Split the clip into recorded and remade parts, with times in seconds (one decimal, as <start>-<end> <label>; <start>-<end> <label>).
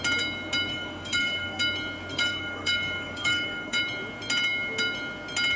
0.0-0.7 recorded; 0.7-1.6 remade; 1.6-2.1 recorded; 2.1-3.8 remade; 3.8-5.6 recorded